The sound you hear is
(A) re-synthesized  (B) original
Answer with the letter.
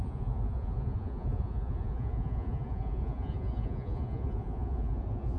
A